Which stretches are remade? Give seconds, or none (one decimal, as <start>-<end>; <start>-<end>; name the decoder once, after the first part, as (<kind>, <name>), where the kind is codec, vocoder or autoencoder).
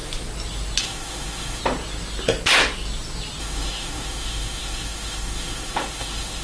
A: 0.8-1.6 (autoencoder, DAC-VAE); 3.4-6.4